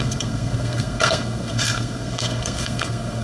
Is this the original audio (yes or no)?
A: no